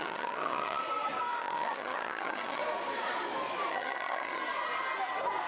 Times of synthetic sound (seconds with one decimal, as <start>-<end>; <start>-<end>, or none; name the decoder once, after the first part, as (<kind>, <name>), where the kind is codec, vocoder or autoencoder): 0.0-0.8 (vocoder, HiFi-GAN); 1.4-2.6; 3.7-4.4